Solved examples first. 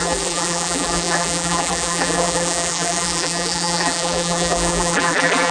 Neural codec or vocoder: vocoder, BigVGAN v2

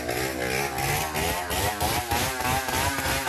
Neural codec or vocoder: none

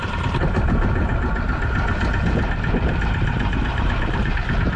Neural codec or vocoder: vocoder, BigVGAN v2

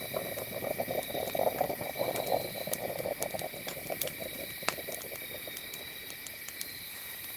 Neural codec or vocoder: none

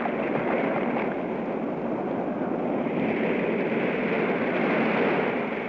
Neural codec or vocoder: none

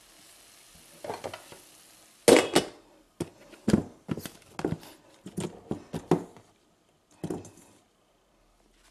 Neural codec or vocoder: none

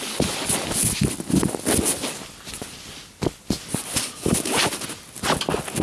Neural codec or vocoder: none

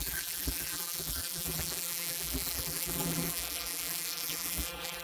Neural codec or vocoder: vocoder, BigVGAN v2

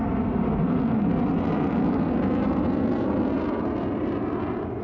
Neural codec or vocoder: none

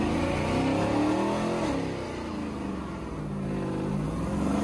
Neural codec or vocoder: none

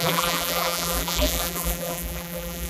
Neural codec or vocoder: vocoder, BigVGAN v2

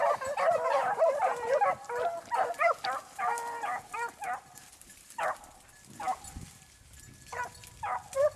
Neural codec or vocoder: none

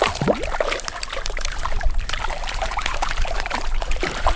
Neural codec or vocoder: vocoder, BigVGAN v2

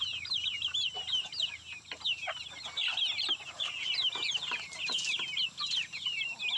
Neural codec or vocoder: none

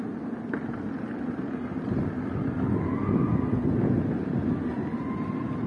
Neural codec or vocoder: none